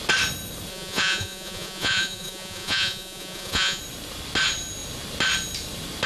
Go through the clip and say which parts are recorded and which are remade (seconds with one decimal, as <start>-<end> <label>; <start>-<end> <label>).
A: 0.0-0.7 recorded; 0.7-3.8 remade; 3.8-6.1 recorded